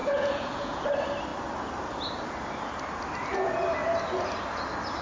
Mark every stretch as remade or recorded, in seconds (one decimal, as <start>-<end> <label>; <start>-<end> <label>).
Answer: 0.0-0.8 remade; 0.8-5.0 recorded

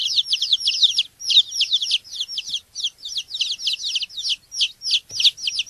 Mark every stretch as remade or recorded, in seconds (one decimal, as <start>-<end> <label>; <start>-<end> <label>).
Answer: 0.0-3.4 remade; 3.4-5.7 recorded

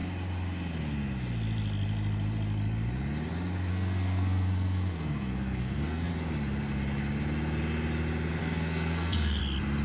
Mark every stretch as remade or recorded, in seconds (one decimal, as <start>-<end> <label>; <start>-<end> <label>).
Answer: 0.0-3.7 recorded; 3.7-6.1 remade; 6.1-8.4 recorded; 8.4-9.4 remade; 9.4-9.8 recorded

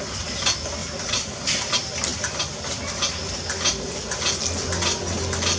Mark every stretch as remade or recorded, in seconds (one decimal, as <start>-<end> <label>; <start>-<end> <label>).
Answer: 0.0-5.6 recorded